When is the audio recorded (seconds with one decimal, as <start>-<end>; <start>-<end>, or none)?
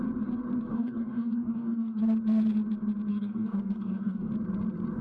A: 0.0-0.7; 2.0-3.1; 4.3-5.0